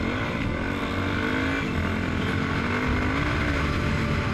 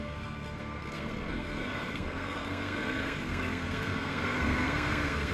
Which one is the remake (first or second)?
second